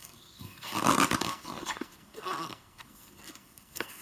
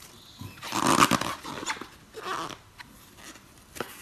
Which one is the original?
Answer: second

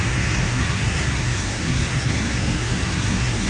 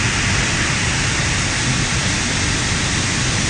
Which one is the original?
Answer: second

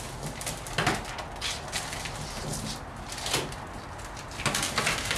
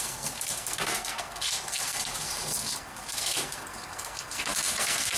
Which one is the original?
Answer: first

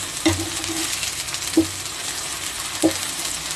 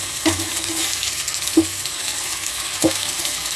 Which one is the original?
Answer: first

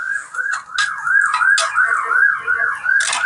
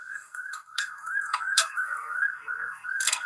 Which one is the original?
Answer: first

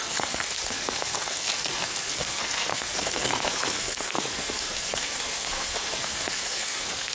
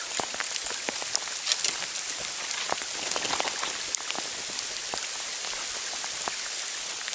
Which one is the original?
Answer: second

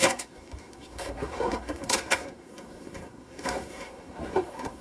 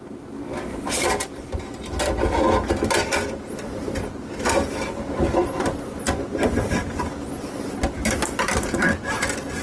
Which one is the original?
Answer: second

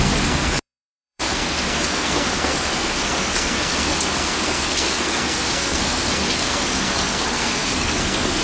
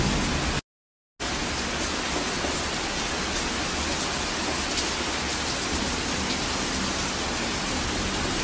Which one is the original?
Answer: second